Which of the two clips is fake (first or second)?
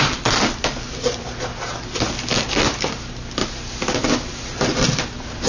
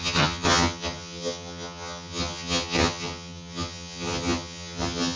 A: second